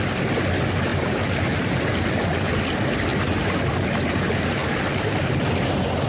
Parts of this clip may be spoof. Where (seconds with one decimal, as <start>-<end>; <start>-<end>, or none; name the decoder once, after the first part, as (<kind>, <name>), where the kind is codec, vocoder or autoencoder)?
0.9-1.6 (vocoder, BigVGAN v2); 3.1-3.7; 4.6-6.1